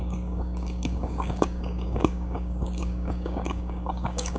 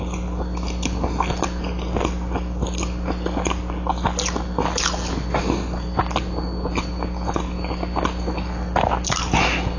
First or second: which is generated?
first